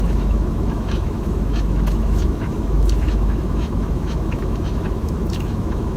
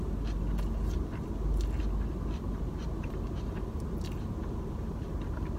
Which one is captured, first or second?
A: second